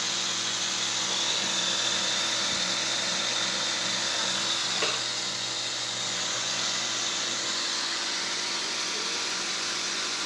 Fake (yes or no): yes